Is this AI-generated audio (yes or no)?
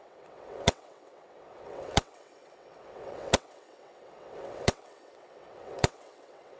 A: yes